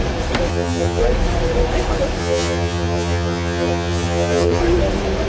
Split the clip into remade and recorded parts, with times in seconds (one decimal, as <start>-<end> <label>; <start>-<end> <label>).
0.0-0.5 recorded; 0.5-1.0 remade; 1.0-2.2 recorded; 2.2-4.6 remade; 4.6-5.3 recorded